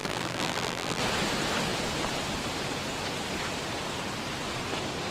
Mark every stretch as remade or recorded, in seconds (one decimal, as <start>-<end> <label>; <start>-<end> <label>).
0.0-1.0 remade; 1.0-5.1 recorded